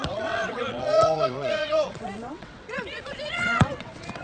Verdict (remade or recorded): remade